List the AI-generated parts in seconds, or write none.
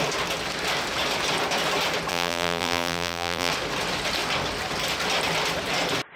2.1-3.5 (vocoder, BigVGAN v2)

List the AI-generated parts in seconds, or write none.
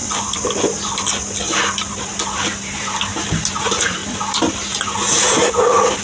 3.6-4.0 (vocoder, Vocos)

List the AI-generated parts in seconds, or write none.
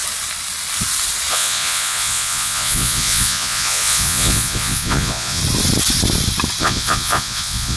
1.3-5.4 (vocoder, Vocos); 6.6-7.8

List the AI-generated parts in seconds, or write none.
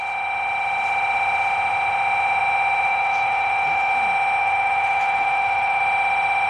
2.9-3.9 (autoencoder, DAC-VAE); 4.4-5.8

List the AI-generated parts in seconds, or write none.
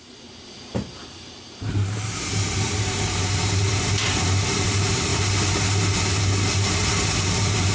0.0-5.1 (vocoder, BigVGAN v2); 6.5-7.7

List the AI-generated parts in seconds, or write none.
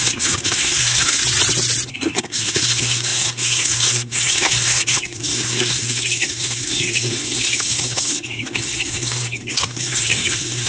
0.0-1.2 (codec, SNAC); 1.9-10.7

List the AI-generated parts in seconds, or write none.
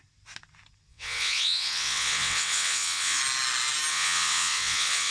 0.9-3.2 (vocoder, WaveNeXt); 3.9-5.1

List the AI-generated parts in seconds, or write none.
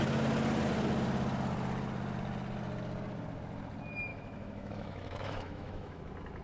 4.1-6.0 (autoencoder, DAC-VAE)